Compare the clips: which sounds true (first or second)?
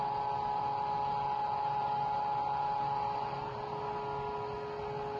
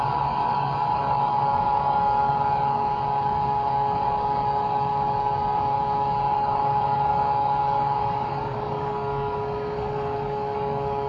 first